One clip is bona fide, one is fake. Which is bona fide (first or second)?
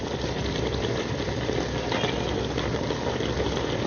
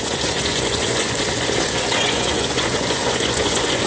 first